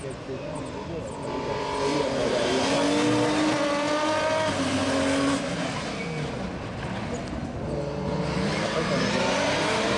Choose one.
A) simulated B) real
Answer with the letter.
B